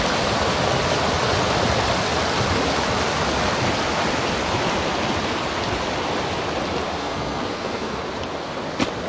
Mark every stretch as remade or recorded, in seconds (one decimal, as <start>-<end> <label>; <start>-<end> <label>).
0.0-7.0 recorded; 7.0-8.0 remade; 8.0-9.1 recorded